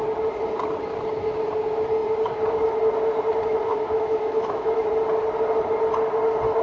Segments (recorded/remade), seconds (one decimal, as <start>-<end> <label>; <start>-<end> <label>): 0.0-3.7 recorded; 3.7-4.9 remade; 4.9-6.6 recorded